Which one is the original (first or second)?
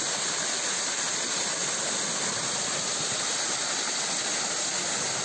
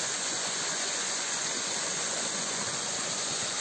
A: first